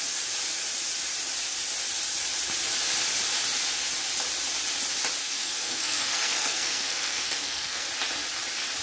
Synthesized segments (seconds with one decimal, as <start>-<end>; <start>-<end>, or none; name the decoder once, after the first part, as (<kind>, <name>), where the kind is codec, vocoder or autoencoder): 5.2-7.9 (codec, SNAC)